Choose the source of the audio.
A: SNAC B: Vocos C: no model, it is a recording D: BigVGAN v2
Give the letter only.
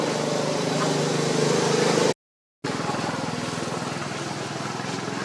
C